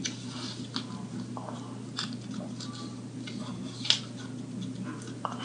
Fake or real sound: real